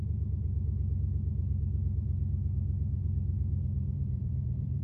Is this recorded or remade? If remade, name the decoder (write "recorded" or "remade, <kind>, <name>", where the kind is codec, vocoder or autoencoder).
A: remade, vocoder, BigVGAN v2